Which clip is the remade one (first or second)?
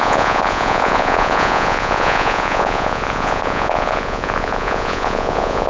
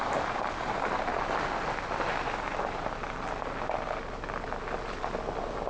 first